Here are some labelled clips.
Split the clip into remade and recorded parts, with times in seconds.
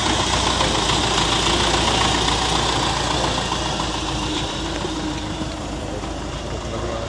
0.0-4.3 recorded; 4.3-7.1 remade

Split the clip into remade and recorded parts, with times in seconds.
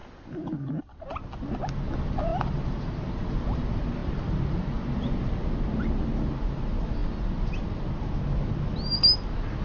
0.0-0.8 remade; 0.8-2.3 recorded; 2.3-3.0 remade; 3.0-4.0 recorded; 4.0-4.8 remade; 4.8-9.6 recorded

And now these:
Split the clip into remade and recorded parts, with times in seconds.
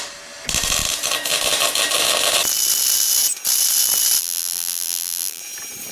0.0-4.2 recorded; 4.2-5.4 remade; 5.4-5.9 recorded